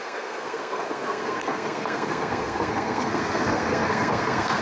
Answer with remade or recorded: remade